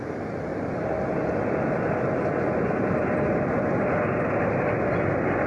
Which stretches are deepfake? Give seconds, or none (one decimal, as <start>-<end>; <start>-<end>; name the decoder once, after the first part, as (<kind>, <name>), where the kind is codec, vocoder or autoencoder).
none